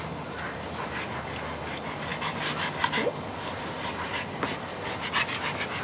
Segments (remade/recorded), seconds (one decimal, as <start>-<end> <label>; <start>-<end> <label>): 0.0-5.8 recorded